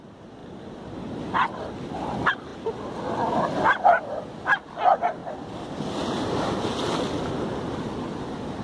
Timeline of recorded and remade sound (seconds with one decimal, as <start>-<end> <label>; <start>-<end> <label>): 0.0-8.6 recorded